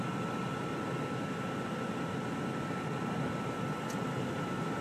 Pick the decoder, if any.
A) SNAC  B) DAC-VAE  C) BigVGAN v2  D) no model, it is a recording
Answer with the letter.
D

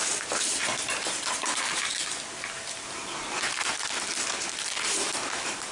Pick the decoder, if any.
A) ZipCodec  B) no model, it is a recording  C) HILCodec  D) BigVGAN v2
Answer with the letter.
B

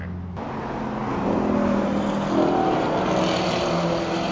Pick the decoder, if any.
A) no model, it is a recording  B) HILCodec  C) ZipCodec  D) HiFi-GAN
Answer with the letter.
A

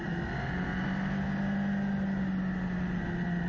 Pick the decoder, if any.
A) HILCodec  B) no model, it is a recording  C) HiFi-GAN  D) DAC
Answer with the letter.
B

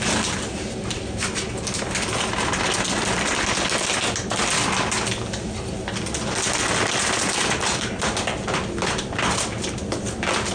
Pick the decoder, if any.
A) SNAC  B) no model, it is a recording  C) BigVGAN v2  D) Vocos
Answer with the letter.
B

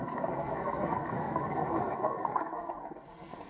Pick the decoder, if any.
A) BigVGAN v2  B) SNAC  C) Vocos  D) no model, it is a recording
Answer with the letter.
B